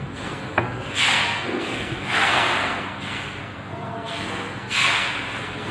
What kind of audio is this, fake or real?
fake